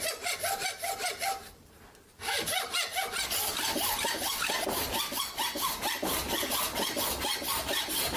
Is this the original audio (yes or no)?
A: yes